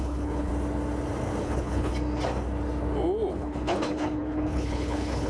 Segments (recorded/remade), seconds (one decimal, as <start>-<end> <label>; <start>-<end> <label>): 0.0-0.5 remade; 0.5-1.4 recorded; 1.4-1.9 remade; 1.9-3.3 recorded; 3.3-5.3 remade